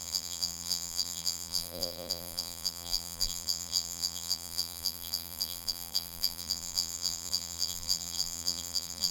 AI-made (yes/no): yes